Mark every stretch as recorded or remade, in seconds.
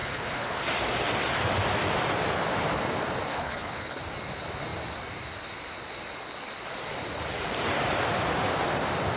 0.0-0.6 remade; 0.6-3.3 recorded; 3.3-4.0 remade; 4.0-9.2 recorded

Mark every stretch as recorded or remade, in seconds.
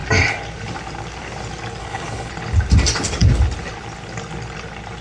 0.0-1.8 recorded; 1.8-2.3 remade; 2.3-5.0 recorded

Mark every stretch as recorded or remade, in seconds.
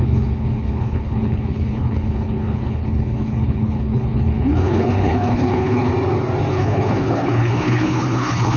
0.0-5.9 remade; 5.9-6.5 recorded; 6.5-8.6 remade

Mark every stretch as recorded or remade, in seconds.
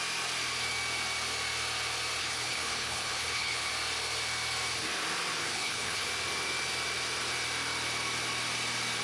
0.0-2.2 recorded; 2.2-3.7 remade; 3.7-5.4 recorded; 5.4-6.1 remade; 6.1-9.0 recorded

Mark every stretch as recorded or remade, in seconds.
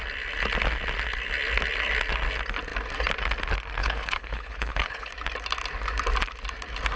0.0-3.8 recorded; 3.8-5.1 remade; 5.1-7.0 recorded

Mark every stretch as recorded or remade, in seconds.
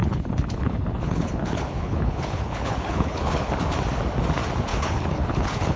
0.0-3.5 remade; 3.5-4.7 recorded; 4.7-5.8 remade